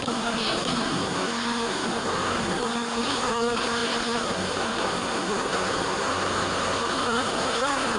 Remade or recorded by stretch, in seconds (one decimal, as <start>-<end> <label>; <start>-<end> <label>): 0.0-8.0 remade